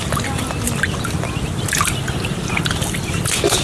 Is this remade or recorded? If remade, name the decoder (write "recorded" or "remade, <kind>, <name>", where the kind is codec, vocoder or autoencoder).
recorded